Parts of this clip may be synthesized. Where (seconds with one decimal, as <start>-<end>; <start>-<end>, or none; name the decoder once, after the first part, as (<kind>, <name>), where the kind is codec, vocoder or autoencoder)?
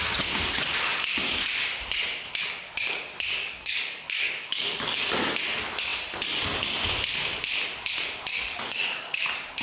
3.4-5.0 (codec, DAC); 8.3-9.6